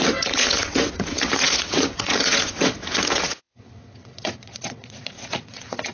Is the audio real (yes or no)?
no